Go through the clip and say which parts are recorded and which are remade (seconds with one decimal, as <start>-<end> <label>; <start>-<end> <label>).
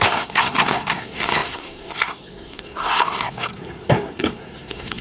0.0-5.0 remade